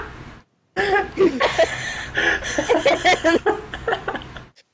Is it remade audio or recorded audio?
recorded